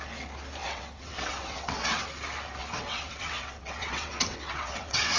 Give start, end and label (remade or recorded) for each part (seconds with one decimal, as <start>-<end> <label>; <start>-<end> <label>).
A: 0.0-0.6 recorded; 0.6-2.0 remade; 2.0-2.6 recorded; 2.6-5.2 remade